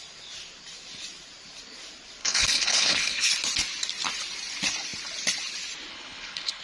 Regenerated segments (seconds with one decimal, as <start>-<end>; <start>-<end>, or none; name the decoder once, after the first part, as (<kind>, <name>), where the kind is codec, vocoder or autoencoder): 2.2-3.3 (codec, HILCodec); 5.9-6.6